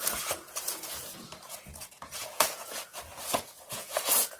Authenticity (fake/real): fake